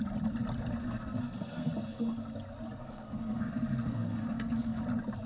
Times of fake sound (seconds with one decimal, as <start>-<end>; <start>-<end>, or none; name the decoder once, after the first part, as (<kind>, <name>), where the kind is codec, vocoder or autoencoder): 0.8-1.7 (codec, SNAC); 2.8-4.8

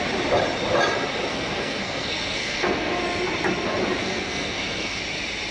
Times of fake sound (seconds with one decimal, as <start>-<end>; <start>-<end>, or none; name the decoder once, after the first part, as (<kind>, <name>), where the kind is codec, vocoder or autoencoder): 1.3-3.0 (codec, SNAC); 4.0-5.0

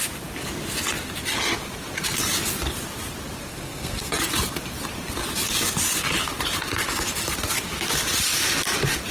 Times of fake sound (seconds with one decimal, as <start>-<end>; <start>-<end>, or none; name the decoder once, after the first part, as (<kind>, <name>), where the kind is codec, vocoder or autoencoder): 3.5-4.1 (codec, SNAC)